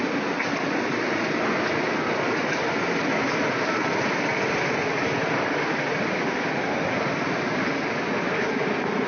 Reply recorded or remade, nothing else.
recorded